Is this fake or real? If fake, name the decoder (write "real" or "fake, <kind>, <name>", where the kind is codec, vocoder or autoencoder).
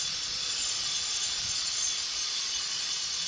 fake, vocoder, Vocos